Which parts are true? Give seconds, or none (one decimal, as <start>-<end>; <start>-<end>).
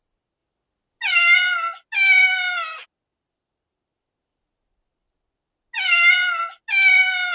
0.0-7.3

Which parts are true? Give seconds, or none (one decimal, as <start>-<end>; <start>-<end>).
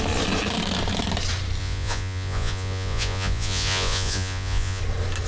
0.0-1.6; 4.8-5.3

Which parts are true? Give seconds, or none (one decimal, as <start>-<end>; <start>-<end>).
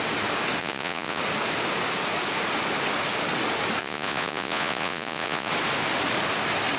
0.0-0.6; 1.2-3.8; 5.5-6.8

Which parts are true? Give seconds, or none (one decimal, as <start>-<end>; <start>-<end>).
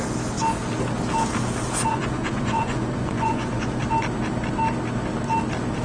0.0-1.9; 3.8-5.8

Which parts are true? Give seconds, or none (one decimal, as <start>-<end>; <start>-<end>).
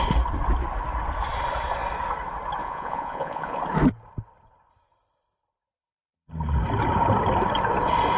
0.0-2.6; 3.6-8.2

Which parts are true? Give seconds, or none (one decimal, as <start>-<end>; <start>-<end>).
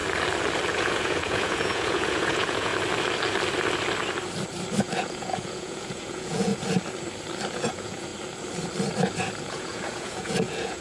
0.0-0.7; 2.7-4.8; 6.5-7.5; 8.1-9.4